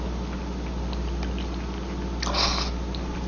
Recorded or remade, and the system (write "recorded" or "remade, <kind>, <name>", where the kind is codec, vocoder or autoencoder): recorded